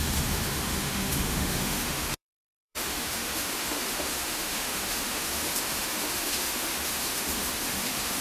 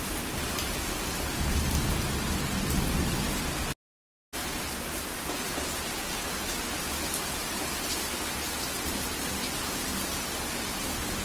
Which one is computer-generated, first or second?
first